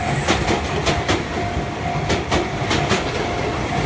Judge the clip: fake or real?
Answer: real